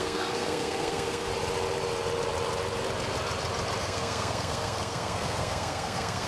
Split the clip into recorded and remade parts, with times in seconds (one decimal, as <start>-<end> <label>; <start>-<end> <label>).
0.0-1.3 remade; 1.3-3.8 recorded; 3.8-6.3 remade